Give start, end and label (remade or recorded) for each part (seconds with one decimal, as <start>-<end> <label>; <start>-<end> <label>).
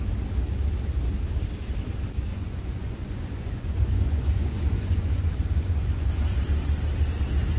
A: 0.0-2.3 recorded; 2.3-6.4 remade; 6.4-7.6 recorded